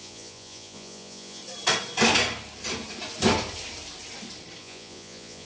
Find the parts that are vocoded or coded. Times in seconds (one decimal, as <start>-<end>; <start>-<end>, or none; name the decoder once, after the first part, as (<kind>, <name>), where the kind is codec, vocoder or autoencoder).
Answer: 0.0-1.4 (vocoder, Vocos); 4.6-5.4